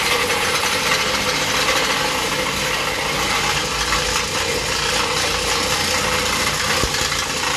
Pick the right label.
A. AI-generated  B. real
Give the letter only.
B